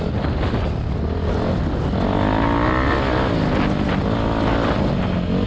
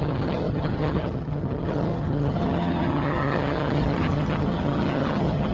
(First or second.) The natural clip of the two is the first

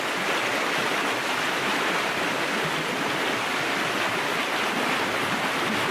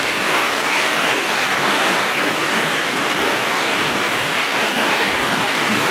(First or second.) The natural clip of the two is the first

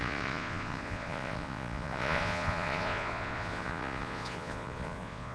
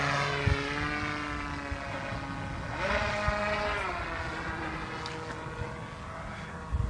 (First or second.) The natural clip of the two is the second